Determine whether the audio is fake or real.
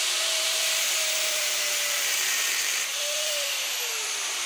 fake